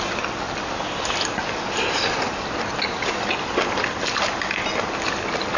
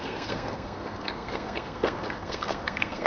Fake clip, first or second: second